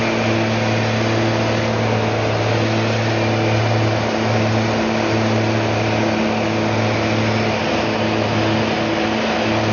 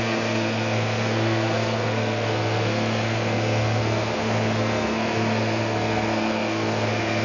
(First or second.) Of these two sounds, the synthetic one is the second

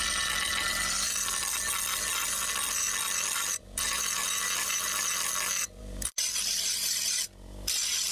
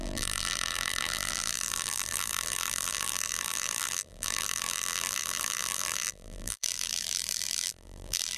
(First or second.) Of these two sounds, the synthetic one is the second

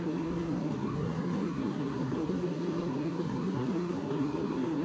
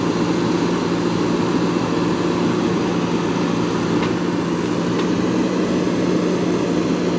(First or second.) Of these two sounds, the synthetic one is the first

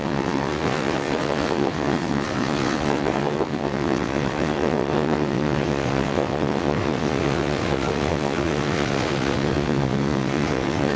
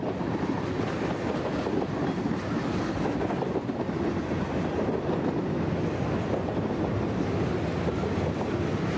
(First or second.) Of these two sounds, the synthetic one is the first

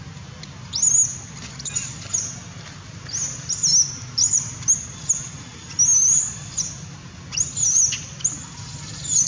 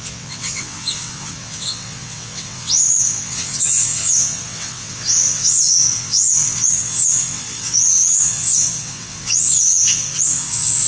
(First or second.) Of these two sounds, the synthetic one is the second